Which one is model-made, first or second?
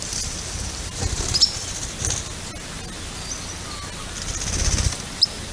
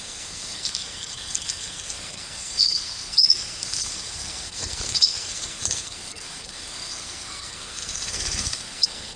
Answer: second